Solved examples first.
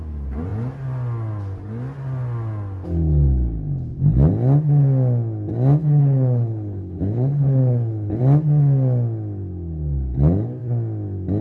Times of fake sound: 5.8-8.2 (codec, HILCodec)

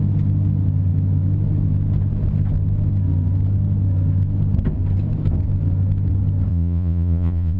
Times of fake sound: 6.5-7.6 (vocoder, Vocos)